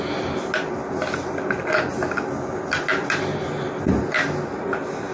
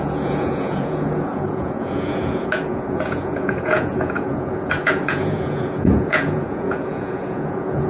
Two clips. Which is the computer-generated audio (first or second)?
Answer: second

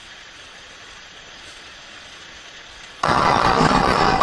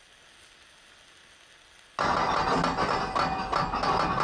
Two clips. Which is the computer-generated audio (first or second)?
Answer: first